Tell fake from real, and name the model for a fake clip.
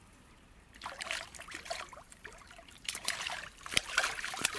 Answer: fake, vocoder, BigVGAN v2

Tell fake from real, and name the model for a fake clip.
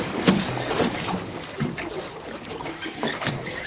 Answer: fake, codec, DAC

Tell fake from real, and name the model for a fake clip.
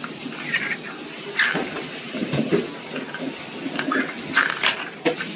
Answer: real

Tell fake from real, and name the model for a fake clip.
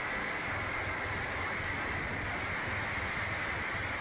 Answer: real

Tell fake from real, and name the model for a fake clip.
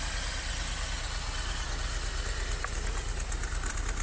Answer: real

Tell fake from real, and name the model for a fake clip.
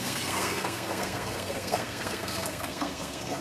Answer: fake, codec, SNAC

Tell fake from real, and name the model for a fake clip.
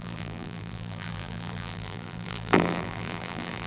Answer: fake, vocoder, BigVGAN v2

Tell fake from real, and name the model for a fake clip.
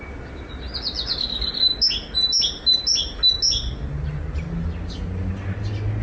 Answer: real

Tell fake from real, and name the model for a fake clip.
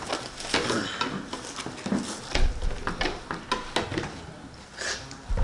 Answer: real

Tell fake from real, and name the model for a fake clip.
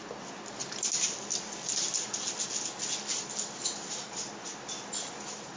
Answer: real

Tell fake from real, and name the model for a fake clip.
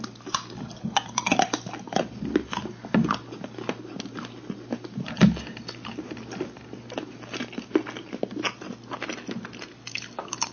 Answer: real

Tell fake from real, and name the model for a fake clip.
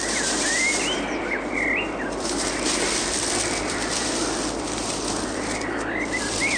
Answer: fake, vocoder, BigVGAN v2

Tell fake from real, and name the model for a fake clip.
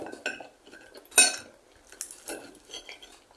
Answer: real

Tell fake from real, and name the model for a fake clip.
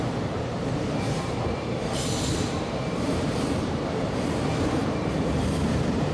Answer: fake, vocoder, BigVGAN v2